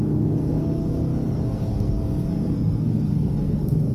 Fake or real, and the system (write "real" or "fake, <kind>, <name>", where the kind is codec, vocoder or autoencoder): fake, codec, SNAC